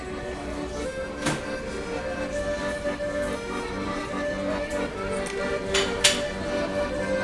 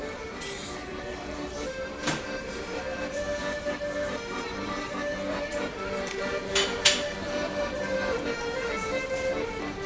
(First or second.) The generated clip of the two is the second